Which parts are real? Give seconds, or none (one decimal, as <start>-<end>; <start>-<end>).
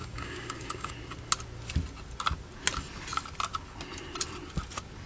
0.9-5.1